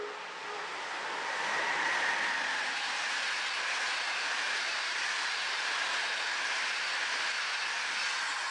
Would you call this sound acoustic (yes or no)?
yes